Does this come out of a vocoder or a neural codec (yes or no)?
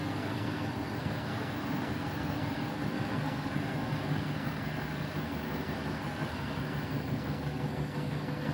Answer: yes